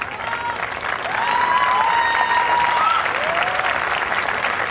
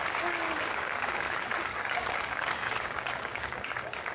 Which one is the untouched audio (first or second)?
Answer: first